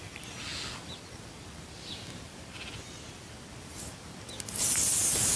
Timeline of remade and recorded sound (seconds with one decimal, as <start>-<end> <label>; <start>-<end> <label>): 0.0-5.4 recorded

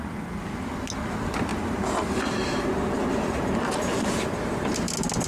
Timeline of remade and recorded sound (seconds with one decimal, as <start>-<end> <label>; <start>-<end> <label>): 0.0-5.3 recorded

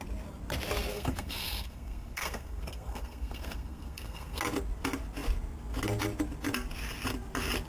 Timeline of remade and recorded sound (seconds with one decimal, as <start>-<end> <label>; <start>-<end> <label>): 0.0-0.9 recorded; 0.9-4.4 remade; 4.4-7.7 recorded

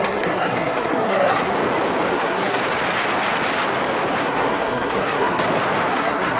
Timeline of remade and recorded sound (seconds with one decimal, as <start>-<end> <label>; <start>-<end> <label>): 0.0-1.5 remade; 1.5-2.1 recorded; 2.1-2.6 remade; 2.6-4.2 recorded; 4.2-5.4 remade; 5.4-5.9 recorded; 5.9-6.4 remade